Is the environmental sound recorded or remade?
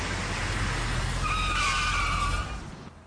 recorded